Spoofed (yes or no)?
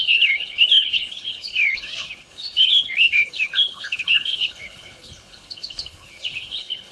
yes